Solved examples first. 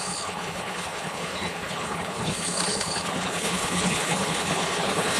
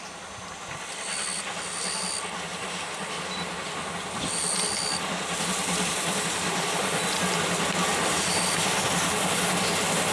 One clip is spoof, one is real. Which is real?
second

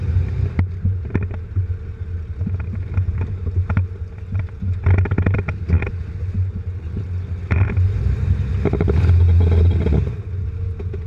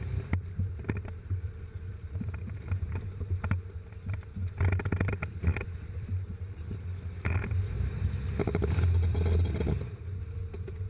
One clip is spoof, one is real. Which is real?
first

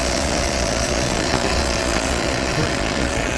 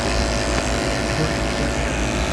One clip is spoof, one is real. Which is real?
second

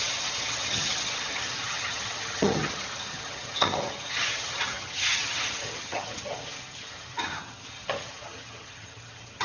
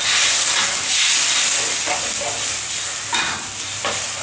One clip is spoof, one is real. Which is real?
second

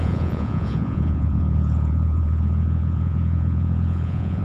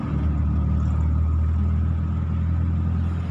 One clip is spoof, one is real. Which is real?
second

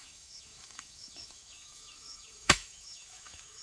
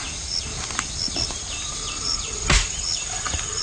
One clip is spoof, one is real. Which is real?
second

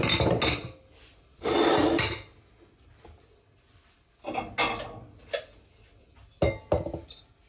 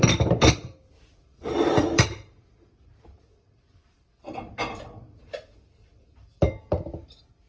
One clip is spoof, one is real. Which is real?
first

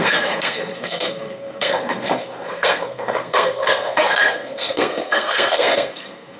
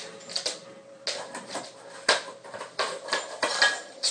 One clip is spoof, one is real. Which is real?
second